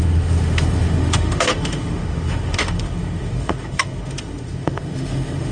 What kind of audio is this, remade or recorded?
remade